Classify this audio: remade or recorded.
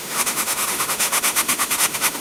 remade